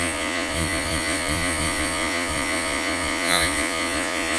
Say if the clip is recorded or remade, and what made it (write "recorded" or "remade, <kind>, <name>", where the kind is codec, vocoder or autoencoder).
remade, vocoder, Vocos